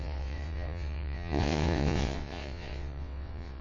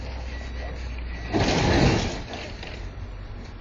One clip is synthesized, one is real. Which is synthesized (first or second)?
first